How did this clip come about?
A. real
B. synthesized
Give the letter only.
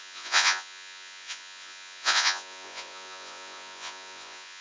B